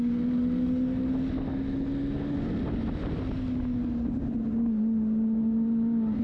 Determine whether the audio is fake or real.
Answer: real